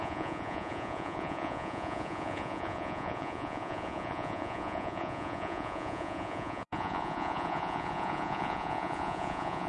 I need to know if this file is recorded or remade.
remade